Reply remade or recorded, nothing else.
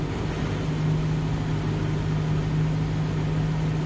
recorded